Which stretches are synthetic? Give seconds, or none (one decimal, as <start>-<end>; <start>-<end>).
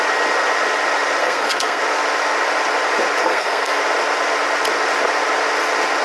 1.2-1.8; 3.2-3.8